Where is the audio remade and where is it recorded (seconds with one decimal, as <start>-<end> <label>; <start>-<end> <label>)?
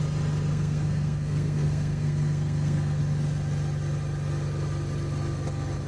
0.0-0.5 recorded; 0.5-3.0 remade; 3.0-5.9 recorded